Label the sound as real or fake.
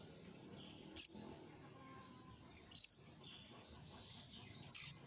real